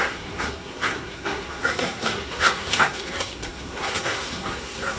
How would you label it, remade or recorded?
remade